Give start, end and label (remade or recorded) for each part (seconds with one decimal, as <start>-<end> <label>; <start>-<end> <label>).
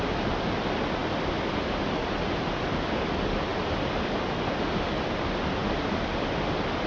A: 0.0-6.9 recorded